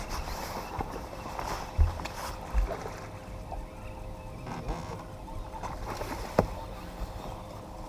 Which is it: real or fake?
real